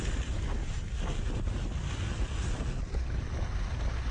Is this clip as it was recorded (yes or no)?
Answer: yes